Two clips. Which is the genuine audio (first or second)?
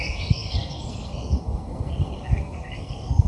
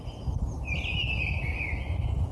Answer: second